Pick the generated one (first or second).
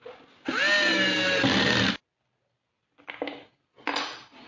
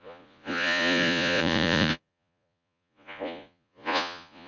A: second